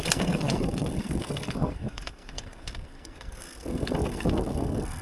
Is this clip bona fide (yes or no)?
no